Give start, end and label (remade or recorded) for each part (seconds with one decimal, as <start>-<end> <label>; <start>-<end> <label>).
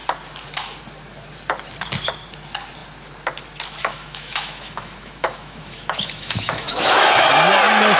0.0-3.8 recorded; 3.8-7.3 remade; 7.3-8.0 recorded